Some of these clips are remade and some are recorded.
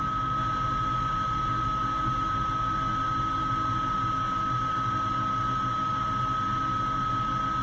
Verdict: recorded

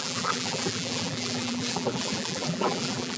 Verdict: remade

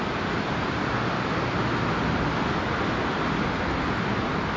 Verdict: recorded